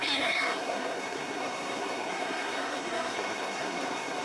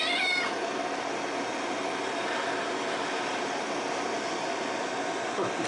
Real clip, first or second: second